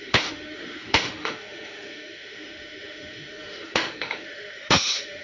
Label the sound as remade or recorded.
remade